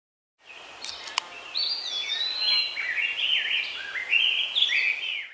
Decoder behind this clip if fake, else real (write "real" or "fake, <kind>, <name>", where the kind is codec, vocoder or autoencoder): real